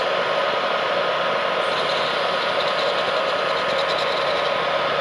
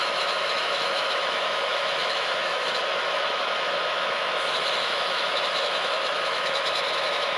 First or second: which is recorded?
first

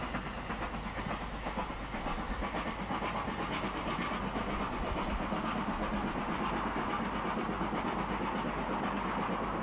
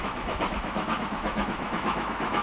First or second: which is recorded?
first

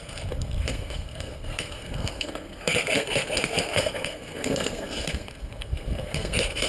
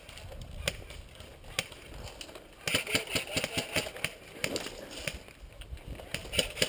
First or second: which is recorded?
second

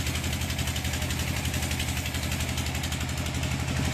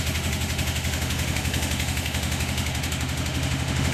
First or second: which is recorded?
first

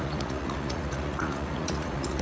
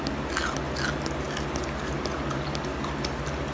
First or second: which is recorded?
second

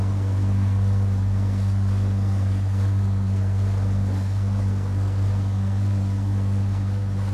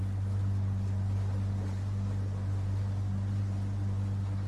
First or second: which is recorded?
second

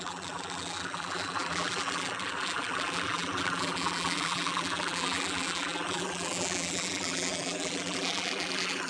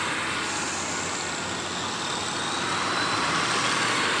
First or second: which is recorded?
second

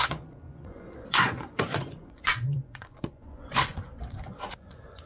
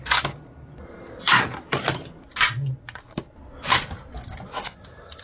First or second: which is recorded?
second